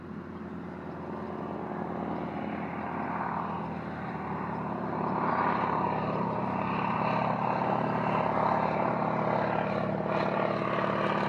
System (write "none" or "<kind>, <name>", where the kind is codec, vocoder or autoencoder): none